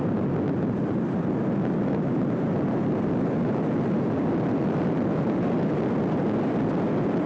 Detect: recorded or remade recorded